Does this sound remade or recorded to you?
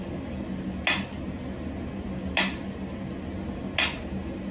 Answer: recorded